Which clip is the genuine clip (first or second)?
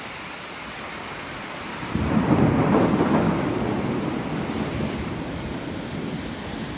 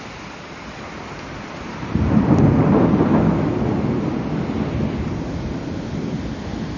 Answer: second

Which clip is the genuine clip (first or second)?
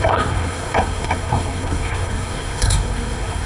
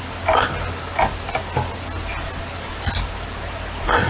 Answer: second